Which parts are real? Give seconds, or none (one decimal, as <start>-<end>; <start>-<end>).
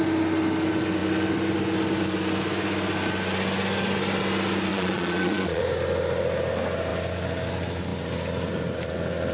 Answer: 0.0-4.7; 5.6-9.3